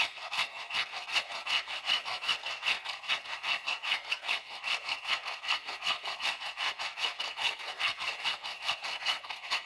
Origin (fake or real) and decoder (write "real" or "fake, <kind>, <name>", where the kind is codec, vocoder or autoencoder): fake, codec, SNAC